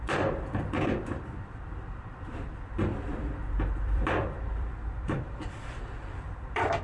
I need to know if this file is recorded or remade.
remade